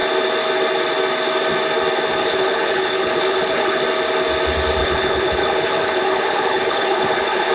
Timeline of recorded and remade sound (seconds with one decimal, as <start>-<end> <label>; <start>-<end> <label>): 0.0-2.2 recorded; 2.2-3.8 remade; 3.8-4.8 recorded; 4.8-7.5 remade